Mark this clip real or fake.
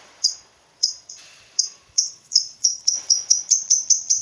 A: fake